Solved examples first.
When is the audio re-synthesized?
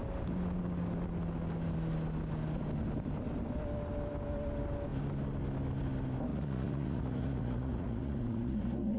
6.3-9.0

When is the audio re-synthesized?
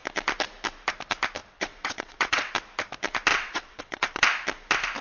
1.4-2.5; 3.3-4.2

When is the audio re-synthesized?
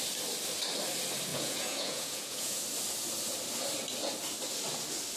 1.3-2.6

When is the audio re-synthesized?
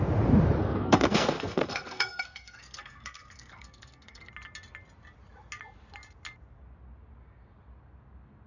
0.6-4.3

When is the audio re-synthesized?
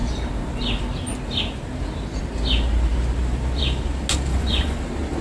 4.3-4.8